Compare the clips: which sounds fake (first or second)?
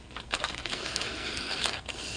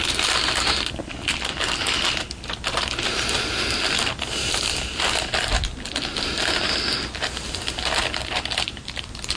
first